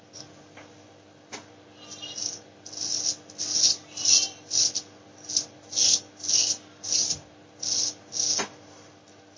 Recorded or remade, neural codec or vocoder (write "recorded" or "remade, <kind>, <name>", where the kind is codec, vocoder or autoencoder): recorded